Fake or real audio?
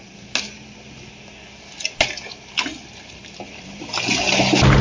real